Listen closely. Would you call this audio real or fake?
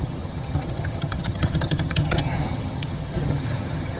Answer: fake